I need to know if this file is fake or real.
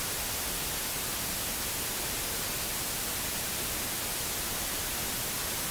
real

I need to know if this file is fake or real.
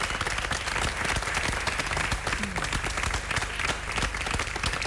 real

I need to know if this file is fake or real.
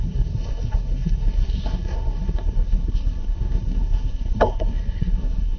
fake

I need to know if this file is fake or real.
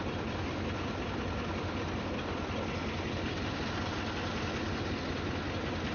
real